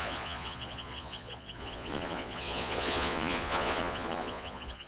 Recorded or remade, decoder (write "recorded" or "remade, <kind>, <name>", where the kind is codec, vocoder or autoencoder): remade, vocoder, Vocos